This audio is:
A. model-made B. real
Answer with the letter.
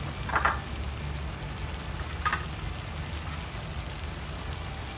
B